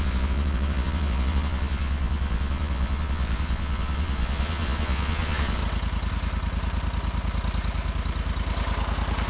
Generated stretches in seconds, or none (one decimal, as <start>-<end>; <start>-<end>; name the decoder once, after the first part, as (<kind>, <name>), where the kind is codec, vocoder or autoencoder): 0.0-5.6 (vocoder, Vocos)